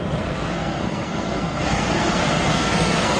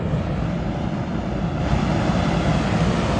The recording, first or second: second